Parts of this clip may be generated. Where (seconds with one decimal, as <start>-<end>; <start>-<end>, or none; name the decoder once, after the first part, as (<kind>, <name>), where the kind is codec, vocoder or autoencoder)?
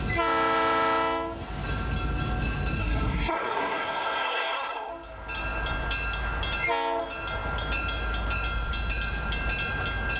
2.8-4.9 (codec, SNAC)